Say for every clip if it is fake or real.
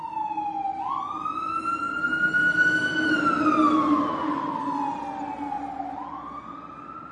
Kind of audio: real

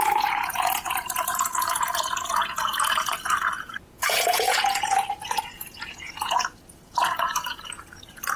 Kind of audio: fake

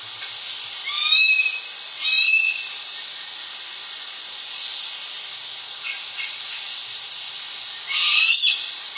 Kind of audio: real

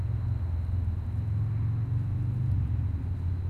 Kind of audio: real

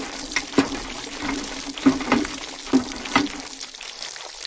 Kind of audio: real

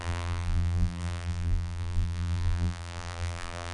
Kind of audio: fake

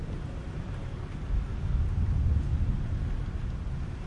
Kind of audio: real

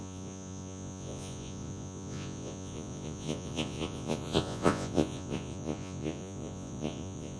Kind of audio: fake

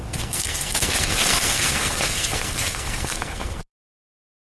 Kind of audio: fake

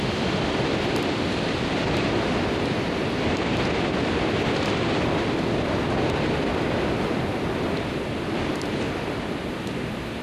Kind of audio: fake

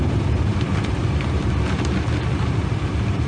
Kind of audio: real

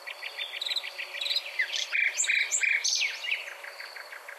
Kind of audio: fake